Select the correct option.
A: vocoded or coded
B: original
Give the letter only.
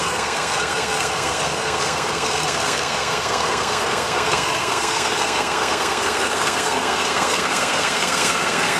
A